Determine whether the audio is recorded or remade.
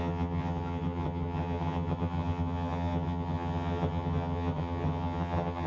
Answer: remade